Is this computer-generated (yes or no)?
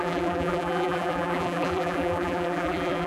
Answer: yes